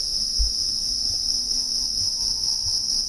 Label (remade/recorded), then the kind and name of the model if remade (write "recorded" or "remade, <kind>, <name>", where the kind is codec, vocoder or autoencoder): recorded